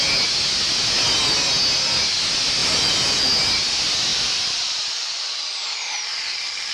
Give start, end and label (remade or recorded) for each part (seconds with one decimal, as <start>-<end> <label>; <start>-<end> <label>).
0.0-2.6 recorded; 2.6-3.3 remade; 3.3-4.1 recorded; 4.1-6.7 remade